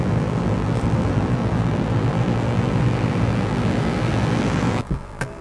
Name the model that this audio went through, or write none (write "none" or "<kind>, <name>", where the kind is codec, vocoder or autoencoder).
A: vocoder, BigVGAN v2